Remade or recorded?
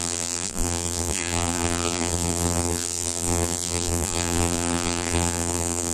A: remade